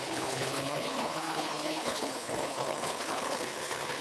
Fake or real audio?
fake